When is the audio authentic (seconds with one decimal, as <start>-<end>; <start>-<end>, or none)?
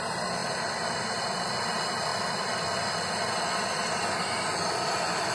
0.0-5.3